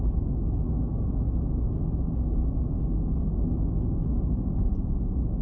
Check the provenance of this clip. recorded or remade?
remade